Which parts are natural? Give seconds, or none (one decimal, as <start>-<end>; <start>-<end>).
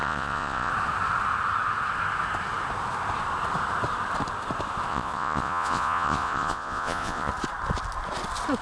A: 0.7-4.9; 7.3-8.6